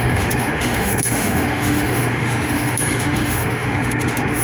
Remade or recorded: remade